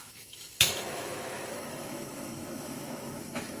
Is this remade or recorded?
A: remade